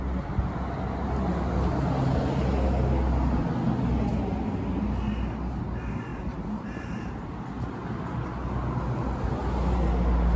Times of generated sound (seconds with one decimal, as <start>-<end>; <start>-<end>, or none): none